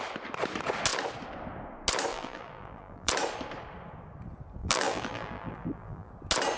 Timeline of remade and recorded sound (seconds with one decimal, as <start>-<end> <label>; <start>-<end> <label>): 0.0-2.1 recorded; 2.1-3.1 remade; 3.1-4.6 recorded; 4.6-6.1 remade; 6.1-6.6 recorded